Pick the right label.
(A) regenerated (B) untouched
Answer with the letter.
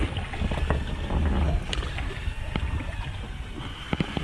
B